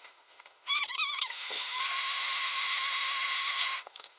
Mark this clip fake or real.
fake